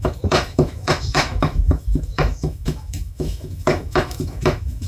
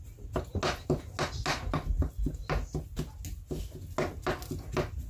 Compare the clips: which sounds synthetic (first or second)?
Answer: first